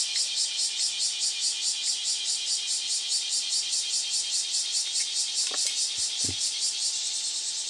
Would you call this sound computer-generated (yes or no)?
yes